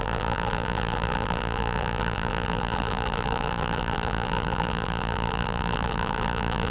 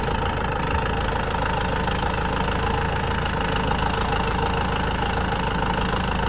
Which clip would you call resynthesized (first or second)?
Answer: first